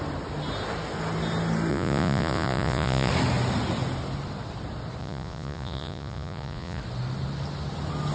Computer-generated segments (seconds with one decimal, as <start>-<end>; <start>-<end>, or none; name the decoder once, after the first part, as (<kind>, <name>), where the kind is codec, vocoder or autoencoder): 1.7-3.1 (vocoder, Vocos); 5.0-6.8